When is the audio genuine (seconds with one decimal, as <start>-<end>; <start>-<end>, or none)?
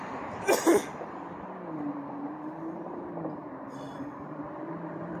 0.8-1.7